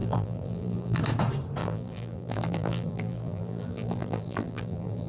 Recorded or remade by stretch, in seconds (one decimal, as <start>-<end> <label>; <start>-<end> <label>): 0.0-1.0 remade; 1.0-1.6 recorded; 1.6-5.1 remade